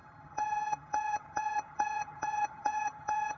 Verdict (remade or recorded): remade